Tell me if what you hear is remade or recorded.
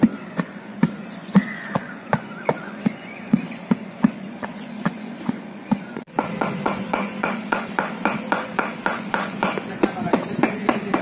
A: remade